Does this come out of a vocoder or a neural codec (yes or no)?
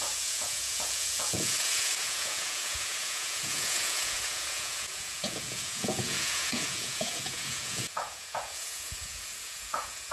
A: yes